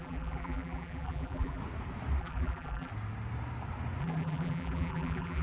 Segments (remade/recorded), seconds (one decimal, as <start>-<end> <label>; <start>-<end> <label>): 0.0-1.6 remade; 1.6-2.2 recorded; 2.2-2.9 remade; 2.9-4.0 recorded; 4.0-5.4 remade

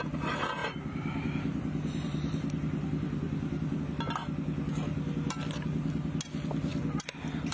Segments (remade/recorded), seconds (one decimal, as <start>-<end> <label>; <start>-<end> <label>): 0.0-0.6 recorded; 0.6-3.8 remade; 3.8-6.7 recorded; 6.7-7.5 remade